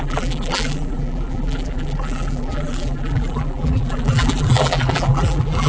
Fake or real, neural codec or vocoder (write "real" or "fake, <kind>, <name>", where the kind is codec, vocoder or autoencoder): fake, vocoder, BigVGAN v2